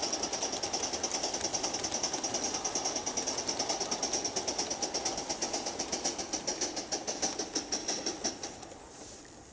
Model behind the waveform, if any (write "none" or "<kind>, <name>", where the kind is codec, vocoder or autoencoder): none